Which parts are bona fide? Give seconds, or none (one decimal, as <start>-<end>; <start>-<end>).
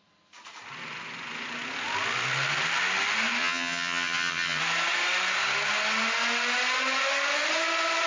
0.0-3.4; 4.6-8.1